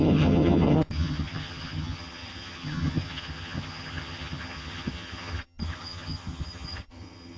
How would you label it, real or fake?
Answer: fake